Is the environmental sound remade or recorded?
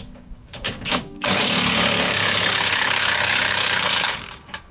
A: remade